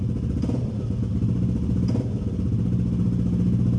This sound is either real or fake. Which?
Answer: real